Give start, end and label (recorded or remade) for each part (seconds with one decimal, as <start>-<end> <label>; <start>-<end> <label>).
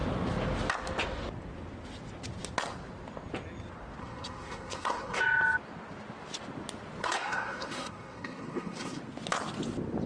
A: 0.0-4.0 recorded; 4.0-5.2 remade; 5.2-7.0 recorded; 7.0-9.0 remade; 9.0-10.1 recorded